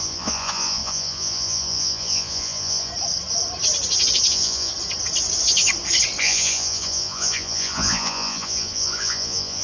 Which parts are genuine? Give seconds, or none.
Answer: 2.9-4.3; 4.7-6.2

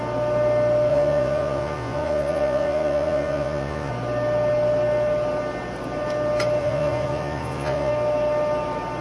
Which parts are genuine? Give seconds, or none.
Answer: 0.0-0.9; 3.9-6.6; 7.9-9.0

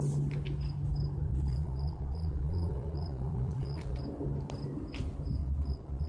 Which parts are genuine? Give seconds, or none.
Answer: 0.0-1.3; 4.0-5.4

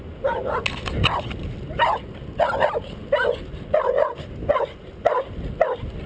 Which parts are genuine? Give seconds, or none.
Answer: 0.0-6.1

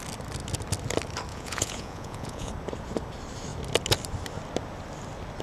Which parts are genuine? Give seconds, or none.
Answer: 0.0-1.3; 2.5-5.4

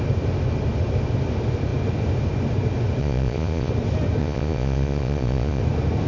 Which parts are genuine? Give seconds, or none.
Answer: 0.0-3.0; 3.7-4.2; 5.6-6.1

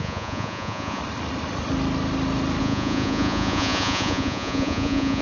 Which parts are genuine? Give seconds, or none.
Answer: 1.0-2.6